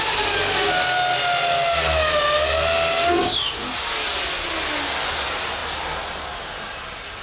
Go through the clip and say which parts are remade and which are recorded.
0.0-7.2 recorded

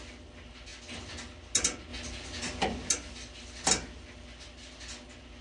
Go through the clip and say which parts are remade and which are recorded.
0.0-5.4 recorded

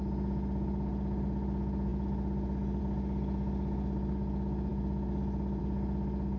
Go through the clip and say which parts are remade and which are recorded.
0.0-6.4 recorded

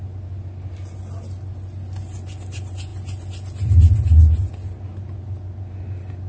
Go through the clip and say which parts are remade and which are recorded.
0.0-6.3 recorded

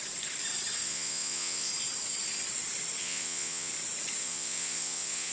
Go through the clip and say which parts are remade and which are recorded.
0.0-0.8 recorded; 0.8-1.7 remade; 1.7-3.0 recorded; 3.0-3.7 remade; 3.7-4.2 recorded; 4.2-5.3 remade

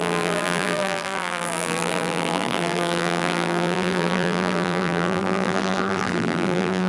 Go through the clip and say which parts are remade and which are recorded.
0.0-6.9 remade

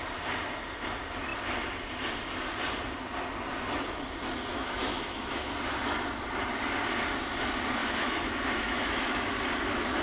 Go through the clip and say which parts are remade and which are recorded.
0.0-4.5 recorded; 4.5-5.5 remade; 5.5-7.8 recorded; 7.8-9.3 remade; 9.3-10.0 recorded

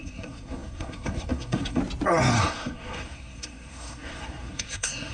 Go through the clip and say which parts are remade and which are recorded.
0.0-1.8 remade; 1.8-2.4 recorded; 2.4-5.1 remade